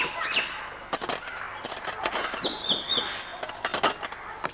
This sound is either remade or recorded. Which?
recorded